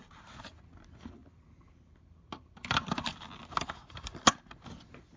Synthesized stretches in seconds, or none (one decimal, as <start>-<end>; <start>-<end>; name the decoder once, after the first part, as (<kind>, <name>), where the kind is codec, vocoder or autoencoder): none